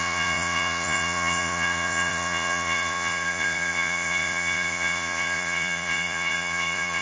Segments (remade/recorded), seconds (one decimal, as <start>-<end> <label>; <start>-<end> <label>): 0.0-7.0 remade